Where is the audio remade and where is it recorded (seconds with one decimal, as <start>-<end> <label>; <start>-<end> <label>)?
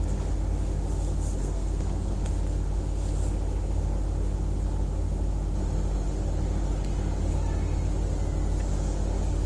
0.0-1.4 recorded; 1.4-2.3 remade; 2.3-9.5 recorded